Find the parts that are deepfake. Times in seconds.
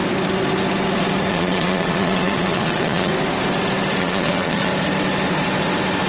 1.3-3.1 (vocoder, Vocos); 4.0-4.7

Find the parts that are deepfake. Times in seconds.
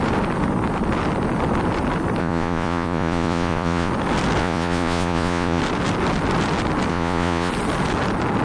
2.2-3.9 (vocoder, Vocos); 4.4-5.6; 6.9-7.5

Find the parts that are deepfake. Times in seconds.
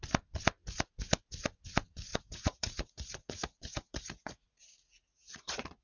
2.1-5.8 (vocoder, Vocos)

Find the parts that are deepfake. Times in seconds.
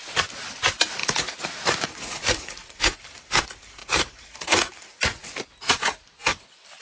1.0-2.9 (vocoder, Vocos); 3.8-4.7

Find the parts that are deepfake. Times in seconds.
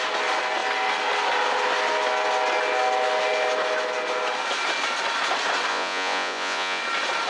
5.7-6.8 (vocoder, Vocos)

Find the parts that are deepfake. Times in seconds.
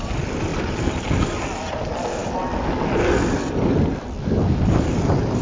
none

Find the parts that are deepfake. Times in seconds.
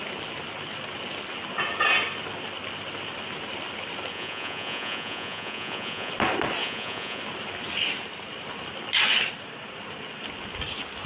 4.1-6.1 (vocoder, Vocos); 6.6-7.2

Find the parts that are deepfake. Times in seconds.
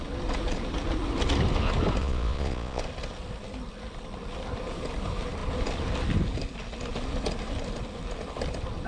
2.0-2.8 (vocoder, Vocos)